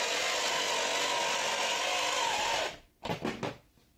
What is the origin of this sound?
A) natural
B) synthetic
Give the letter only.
A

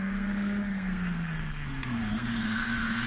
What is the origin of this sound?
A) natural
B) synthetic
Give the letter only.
B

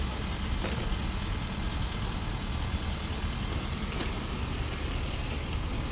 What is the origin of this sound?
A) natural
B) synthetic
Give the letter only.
A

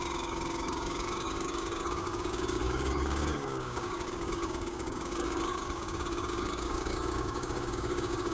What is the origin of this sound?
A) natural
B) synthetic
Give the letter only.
B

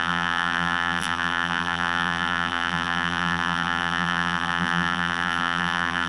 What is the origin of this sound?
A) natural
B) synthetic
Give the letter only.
B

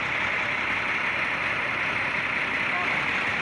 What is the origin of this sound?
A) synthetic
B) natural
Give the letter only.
A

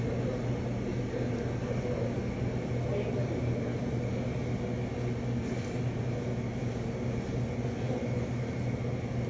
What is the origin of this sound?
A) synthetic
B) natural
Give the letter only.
B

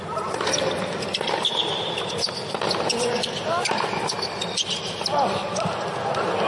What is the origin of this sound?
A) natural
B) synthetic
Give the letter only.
A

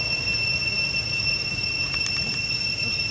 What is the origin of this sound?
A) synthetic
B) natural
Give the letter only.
B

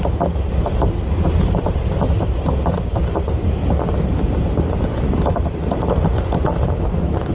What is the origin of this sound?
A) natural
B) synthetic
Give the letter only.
A